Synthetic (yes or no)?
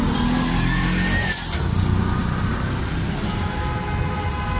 no